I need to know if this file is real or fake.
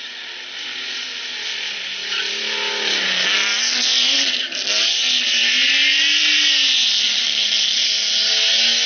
real